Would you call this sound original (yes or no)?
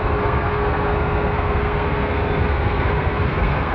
no